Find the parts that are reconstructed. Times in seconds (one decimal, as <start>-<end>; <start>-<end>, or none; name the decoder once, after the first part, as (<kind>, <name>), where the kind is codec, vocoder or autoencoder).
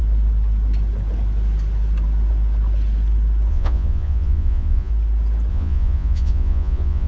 3.5-4.9 (vocoder, Vocos); 5.5-7.1